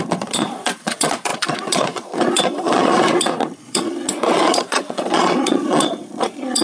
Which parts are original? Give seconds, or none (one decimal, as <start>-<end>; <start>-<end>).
none